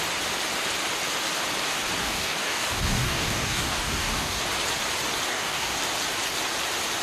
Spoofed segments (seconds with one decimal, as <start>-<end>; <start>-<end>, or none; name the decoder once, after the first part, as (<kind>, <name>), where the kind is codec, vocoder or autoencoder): 2.0-4.4 (codec, DAC); 5.3-5.8